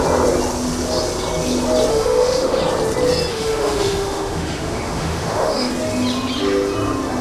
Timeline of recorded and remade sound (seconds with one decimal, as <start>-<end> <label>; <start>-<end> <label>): 0.0-1.9 recorded; 1.9-2.6 remade; 2.6-3.3 recorded; 3.3-5.7 remade; 5.7-7.2 recorded